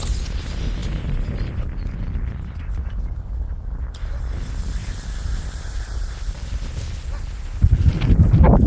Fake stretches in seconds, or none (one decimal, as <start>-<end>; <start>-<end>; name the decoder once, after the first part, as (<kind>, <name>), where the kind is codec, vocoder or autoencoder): none